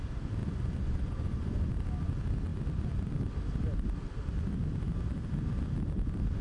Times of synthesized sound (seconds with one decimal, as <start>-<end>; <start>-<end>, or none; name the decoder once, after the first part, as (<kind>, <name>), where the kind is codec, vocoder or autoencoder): 0.4-1.7 (vocoder, Vocos)